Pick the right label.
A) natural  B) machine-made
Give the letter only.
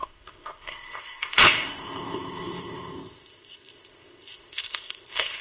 B